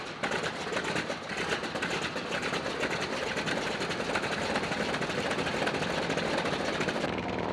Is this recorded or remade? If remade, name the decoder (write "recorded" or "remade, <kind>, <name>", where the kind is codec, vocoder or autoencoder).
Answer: remade, vocoder, BigVGAN v2